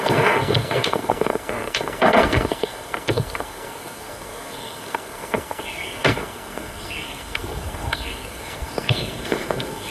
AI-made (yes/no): yes